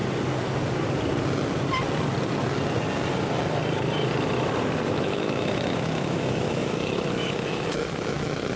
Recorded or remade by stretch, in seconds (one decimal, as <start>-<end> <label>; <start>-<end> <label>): 0.0-4.9 recorded; 4.9-8.6 remade